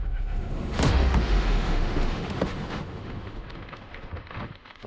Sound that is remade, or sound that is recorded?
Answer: remade